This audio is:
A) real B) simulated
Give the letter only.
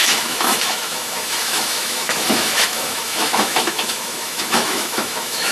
B